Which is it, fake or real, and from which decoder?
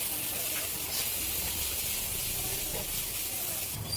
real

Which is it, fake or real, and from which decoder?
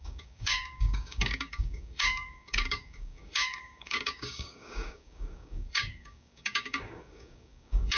fake, codec, DAC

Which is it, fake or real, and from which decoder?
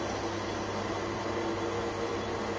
real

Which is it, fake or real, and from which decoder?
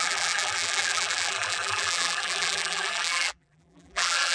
fake, vocoder, BigVGAN v2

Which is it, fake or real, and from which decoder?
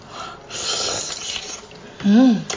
real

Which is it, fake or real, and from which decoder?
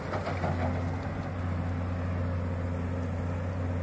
real